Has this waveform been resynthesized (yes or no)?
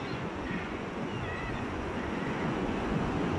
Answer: yes